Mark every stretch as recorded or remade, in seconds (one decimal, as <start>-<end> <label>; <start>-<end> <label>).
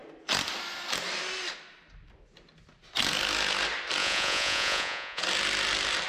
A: 0.0-4.0 recorded; 4.0-5.2 remade; 5.2-6.1 recorded